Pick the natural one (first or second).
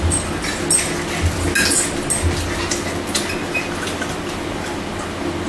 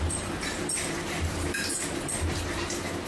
first